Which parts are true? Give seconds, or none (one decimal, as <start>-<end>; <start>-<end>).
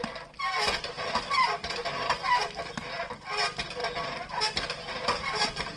0.0-5.8